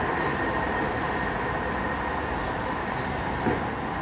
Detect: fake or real real